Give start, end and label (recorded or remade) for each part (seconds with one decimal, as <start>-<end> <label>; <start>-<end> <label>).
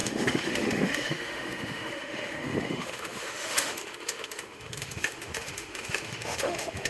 0.0-6.9 remade